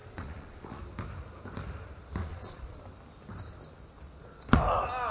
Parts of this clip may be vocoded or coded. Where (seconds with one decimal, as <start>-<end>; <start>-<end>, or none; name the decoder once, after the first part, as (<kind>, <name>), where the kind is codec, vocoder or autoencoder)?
0.0-0.8 (vocoder, Vocos); 2.2-2.8